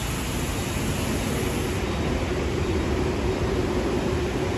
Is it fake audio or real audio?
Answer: real